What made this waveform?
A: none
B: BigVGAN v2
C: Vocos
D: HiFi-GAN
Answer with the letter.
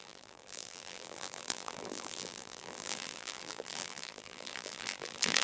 B